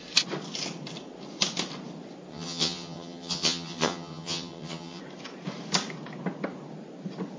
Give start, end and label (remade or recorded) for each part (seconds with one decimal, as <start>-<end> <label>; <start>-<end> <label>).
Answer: 0.0-2.3 recorded; 2.3-5.0 remade; 5.0-7.4 recorded